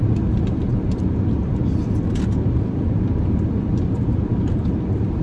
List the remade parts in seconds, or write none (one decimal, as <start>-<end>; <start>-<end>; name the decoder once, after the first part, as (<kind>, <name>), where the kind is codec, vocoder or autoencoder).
none